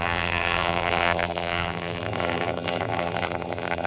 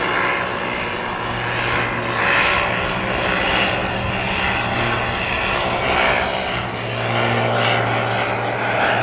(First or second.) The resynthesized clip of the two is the first